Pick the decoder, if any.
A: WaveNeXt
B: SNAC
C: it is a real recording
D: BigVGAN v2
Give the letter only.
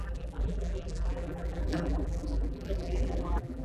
D